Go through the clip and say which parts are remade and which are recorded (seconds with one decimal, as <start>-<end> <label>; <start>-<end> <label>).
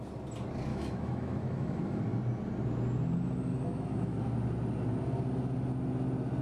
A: 0.0-0.7 recorded; 0.7-2.0 remade; 2.0-3.5 recorded; 3.5-4.2 remade; 4.2-6.4 recorded